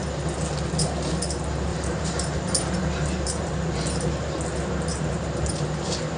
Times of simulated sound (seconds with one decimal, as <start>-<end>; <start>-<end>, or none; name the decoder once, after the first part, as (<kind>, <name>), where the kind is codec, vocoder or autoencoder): 1.7-4.3 (vocoder, BigVGAN v2); 4.9-5.5